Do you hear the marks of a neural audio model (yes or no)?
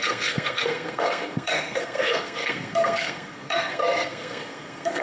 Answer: yes